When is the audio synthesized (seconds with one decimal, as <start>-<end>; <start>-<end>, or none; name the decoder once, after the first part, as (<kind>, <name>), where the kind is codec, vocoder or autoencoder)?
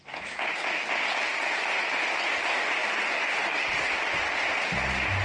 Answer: 2.8-4.8 (vocoder, BigVGAN v2)